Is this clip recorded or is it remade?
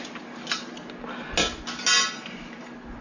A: recorded